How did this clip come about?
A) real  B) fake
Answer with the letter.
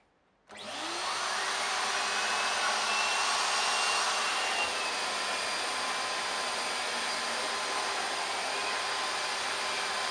A